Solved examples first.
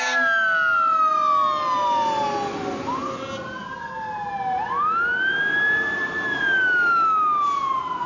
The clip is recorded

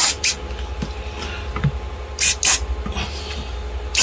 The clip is recorded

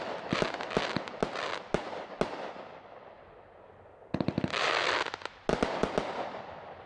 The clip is recorded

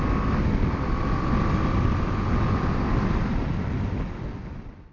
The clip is recorded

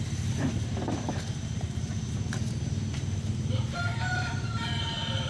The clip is remade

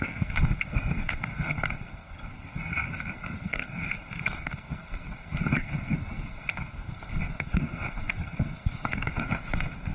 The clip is remade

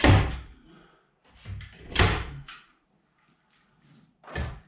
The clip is recorded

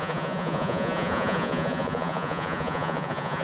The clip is remade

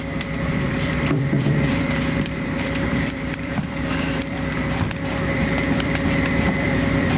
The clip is remade